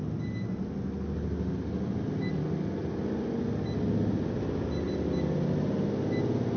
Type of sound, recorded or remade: recorded